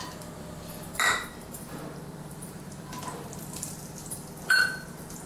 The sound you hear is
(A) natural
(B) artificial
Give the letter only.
B